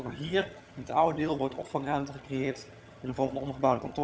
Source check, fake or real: fake